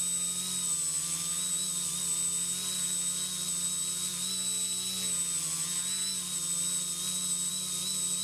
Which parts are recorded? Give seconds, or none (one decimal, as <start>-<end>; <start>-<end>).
0.0-8.2